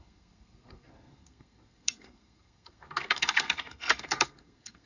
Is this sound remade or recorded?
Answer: remade